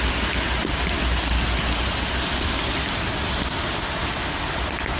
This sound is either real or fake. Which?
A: real